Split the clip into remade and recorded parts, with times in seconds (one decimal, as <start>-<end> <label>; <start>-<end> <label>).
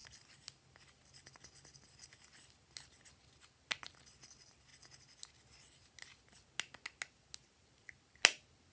0.0-8.7 recorded